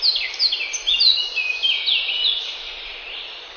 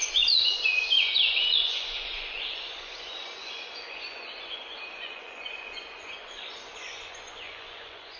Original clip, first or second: first